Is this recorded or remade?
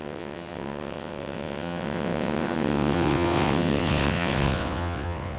remade